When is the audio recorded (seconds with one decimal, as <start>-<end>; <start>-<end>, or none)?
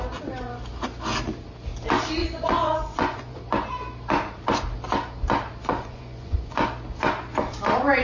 0.0-2.2; 3.4-5.6; 6.7-8.0